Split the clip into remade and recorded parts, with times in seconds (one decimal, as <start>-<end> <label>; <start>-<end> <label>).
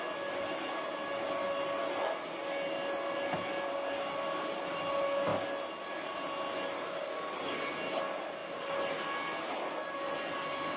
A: 0.0-10.8 recorded